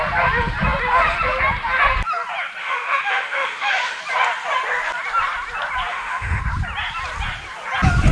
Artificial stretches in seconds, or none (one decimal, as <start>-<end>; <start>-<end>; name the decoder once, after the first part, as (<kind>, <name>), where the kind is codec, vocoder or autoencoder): 2.6-4.0 (autoencoder, DAC-VAE); 5.9-6.4